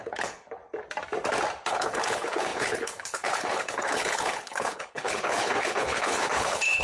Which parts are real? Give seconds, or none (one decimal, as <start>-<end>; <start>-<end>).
0.6-1.7

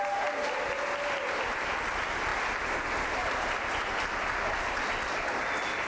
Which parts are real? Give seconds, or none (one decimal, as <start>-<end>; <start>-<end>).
0.0-5.9

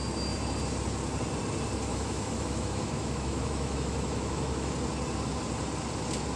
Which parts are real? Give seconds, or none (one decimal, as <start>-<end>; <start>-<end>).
0.0-1.9; 4.7-6.4

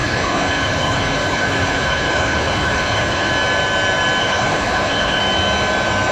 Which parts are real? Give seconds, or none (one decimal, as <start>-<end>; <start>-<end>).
3.3-4.2; 5.2-6.1